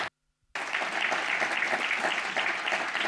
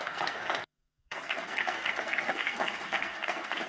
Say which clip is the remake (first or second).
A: second